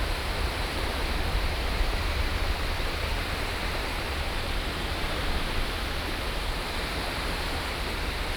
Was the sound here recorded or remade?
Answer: remade